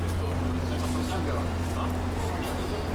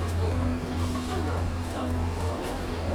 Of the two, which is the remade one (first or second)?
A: second